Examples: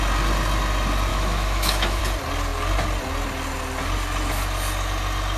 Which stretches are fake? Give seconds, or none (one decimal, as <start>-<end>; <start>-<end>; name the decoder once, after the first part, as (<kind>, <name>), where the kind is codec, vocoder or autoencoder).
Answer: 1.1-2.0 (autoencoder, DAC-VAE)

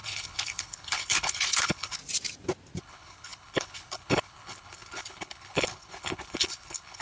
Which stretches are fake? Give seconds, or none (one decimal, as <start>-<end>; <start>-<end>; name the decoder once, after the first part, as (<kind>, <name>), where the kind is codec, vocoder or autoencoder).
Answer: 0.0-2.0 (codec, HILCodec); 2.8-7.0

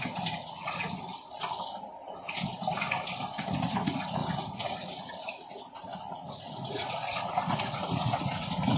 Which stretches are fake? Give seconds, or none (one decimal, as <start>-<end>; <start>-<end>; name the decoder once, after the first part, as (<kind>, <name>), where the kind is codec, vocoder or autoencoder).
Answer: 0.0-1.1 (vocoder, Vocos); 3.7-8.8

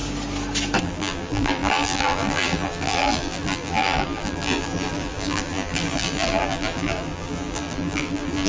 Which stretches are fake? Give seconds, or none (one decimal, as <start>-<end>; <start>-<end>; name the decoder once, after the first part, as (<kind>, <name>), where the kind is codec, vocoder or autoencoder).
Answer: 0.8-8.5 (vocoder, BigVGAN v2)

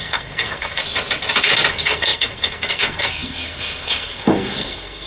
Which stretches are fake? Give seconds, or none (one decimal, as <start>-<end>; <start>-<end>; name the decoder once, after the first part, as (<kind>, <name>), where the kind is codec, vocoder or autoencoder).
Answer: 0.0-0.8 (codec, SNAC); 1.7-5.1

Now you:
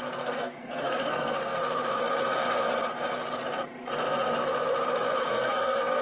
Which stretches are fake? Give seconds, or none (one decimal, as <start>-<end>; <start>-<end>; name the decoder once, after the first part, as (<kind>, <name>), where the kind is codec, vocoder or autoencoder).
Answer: 0.0-1.6 (codec, SNAC); 5.2-6.0

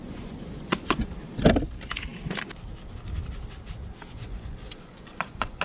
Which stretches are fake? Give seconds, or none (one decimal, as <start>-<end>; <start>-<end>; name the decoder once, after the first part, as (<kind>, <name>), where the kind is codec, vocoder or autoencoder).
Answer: 0.0-1.1 (vocoder, Vocos); 4.1-5.6